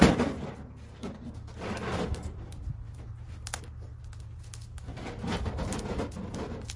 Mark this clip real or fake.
real